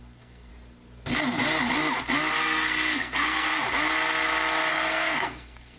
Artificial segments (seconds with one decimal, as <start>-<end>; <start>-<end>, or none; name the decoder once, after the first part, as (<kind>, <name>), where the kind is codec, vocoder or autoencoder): 0.0-0.5 (codec, SNAC); 2.4-3.5; 4.7-5.8